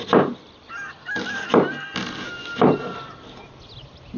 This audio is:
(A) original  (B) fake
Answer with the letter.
A